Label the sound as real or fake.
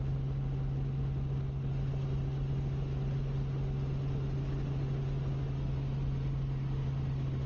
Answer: real